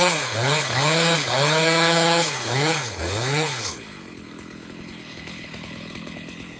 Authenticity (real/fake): fake